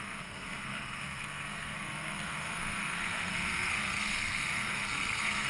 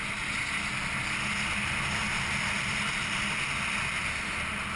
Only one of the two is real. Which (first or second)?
second